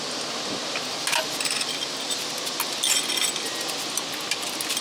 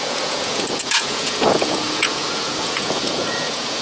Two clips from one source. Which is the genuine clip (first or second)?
first